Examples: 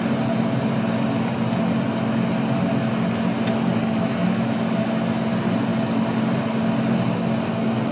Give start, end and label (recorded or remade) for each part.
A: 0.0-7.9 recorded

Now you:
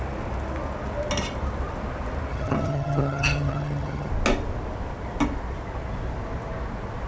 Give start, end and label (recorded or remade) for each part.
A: 0.0-2.3 recorded; 2.3-4.1 remade; 4.1-7.1 recorded

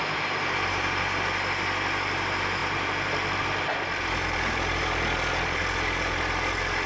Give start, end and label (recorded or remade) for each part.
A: 0.0-2.6 recorded; 2.6-6.9 remade

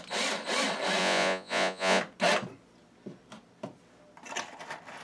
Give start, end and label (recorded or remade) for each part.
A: 0.0-1.0 recorded; 1.0-2.0 remade; 2.0-5.0 recorded

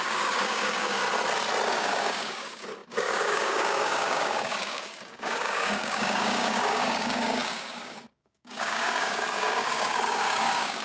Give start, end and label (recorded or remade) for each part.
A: 0.0-1.0 remade; 1.0-1.7 recorded; 1.7-10.8 remade

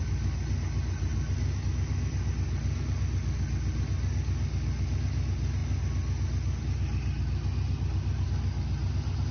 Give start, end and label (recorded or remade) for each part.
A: 0.0-9.3 recorded

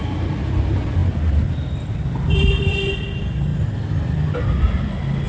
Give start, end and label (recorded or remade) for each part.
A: 0.0-5.3 recorded

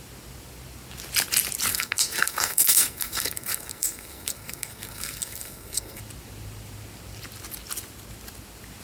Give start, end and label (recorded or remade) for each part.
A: 0.0-1.7 recorded; 1.7-6.0 remade; 6.0-8.8 recorded